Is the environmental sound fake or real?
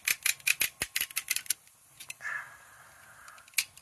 real